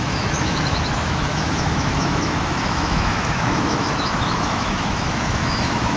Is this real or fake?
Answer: fake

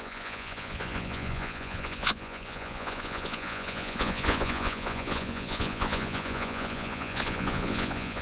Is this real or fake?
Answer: fake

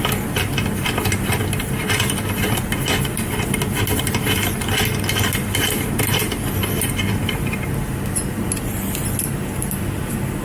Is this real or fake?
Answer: real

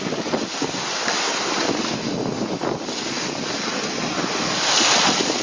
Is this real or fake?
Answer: real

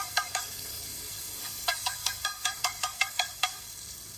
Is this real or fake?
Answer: fake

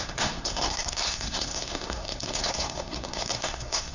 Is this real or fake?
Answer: fake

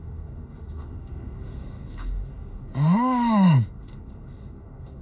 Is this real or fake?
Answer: fake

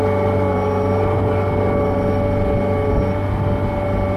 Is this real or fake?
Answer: real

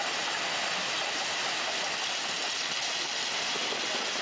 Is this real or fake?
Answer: real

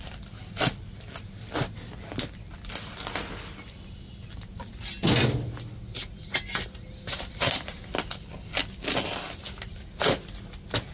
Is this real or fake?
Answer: real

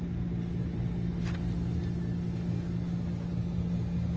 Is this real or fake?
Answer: real